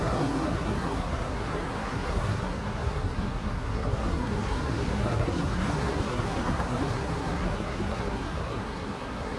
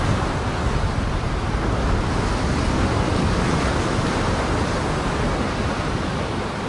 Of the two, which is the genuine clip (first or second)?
second